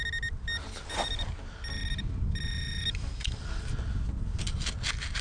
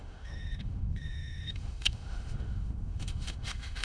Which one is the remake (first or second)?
second